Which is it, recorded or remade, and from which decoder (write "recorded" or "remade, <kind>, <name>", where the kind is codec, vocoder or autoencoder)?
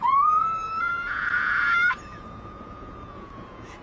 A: remade, vocoder, Vocos